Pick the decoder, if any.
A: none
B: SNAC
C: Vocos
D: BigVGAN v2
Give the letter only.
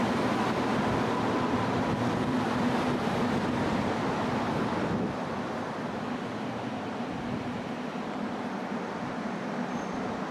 D